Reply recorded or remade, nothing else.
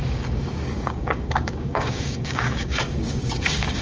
remade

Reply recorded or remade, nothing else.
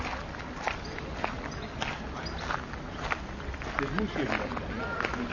recorded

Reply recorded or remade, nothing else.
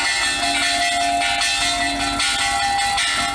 recorded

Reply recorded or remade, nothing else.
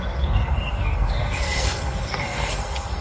remade